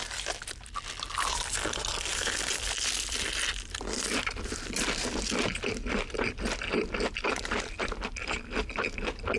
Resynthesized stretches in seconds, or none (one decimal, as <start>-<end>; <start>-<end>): 0.7-9.4